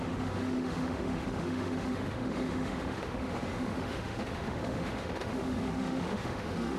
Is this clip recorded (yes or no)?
no